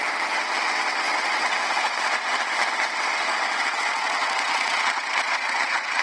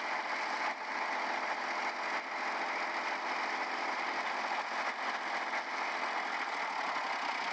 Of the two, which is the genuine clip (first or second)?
second